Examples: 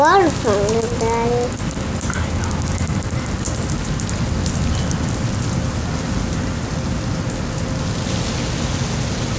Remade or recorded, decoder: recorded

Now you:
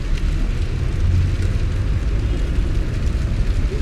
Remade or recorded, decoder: recorded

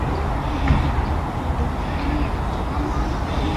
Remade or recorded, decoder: recorded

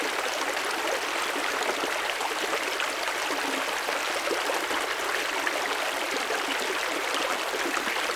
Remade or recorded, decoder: recorded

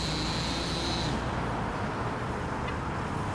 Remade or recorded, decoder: recorded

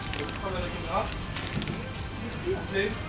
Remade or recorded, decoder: recorded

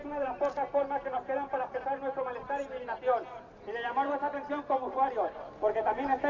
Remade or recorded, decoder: recorded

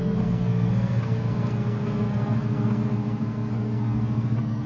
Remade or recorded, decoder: remade, codec, SNAC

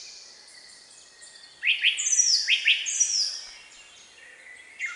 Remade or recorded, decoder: recorded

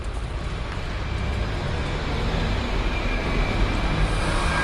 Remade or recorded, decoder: recorded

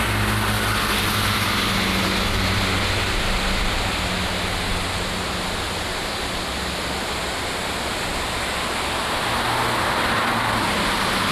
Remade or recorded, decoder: recorded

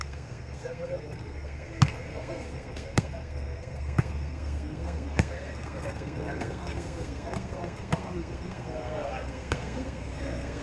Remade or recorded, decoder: remade, codec, SNAC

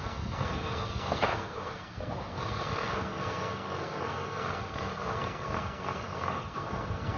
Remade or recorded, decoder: remade, codec, SNAC